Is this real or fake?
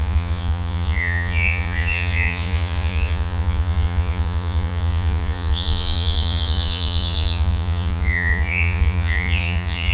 fake